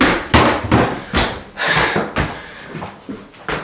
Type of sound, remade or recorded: recorded